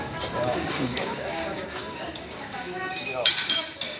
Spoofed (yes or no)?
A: yes